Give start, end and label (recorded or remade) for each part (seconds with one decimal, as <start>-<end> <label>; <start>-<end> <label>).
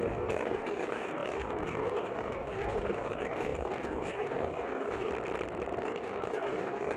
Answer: 0.0-5.1 remade; 5.1-5.8 recorded; 5.8-7.0 remade